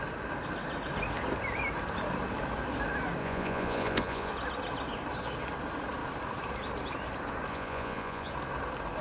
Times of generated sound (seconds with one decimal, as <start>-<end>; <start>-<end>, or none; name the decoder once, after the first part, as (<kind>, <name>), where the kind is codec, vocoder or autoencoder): 3.2-4.3 (vocoder, Vocos); 7.5-8.3